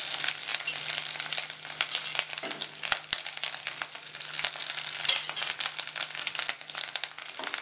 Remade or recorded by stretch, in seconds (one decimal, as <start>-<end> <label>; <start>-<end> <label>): 0.0-7.6 recorded